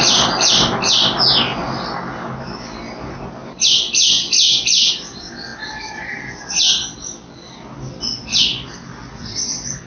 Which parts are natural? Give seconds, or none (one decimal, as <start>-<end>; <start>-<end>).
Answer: 0.0-9.9